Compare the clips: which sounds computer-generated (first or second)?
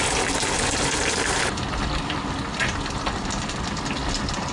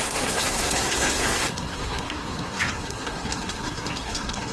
second